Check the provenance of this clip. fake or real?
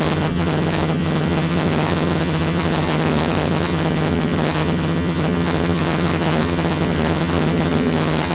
fake